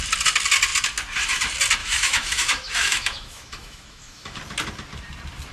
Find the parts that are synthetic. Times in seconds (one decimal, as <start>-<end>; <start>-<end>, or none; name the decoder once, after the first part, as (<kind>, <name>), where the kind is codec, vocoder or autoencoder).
1.8-4.4 (autoencoder, DAC-VAE)